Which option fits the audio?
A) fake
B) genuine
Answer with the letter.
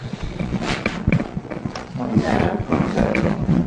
A